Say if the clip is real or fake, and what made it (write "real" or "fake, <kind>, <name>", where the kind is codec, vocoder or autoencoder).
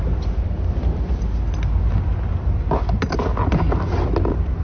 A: real